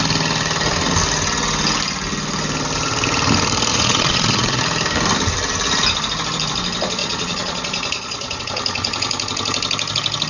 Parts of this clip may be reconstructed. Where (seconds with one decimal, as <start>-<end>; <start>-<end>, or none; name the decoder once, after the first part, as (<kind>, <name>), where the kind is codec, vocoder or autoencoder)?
3.7-4.6 (vocoder, Vocos); 7.0-8.4